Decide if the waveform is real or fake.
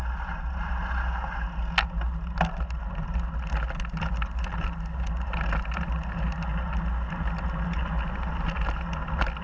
real